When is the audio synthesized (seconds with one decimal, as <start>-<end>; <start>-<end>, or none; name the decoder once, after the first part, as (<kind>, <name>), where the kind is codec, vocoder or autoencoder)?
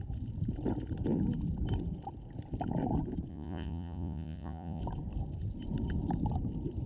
3.3-4.8 (vocoder, Vocos)